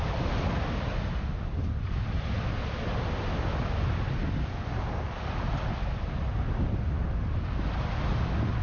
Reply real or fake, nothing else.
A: real